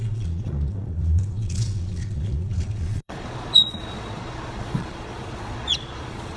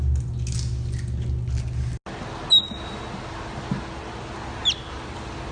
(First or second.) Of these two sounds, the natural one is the second